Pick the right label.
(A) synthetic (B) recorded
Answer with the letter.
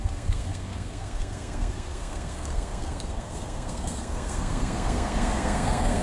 A